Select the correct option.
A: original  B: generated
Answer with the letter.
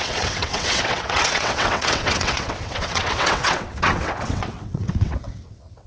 B